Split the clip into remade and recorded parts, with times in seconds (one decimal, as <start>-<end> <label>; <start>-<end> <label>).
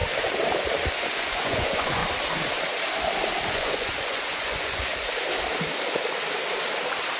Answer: 0.0-0.9 recorded; 0.9-2.0 remade; 2.0-3.5 recorded; 3.5-4.9 remade; 4.9-7.2 recorded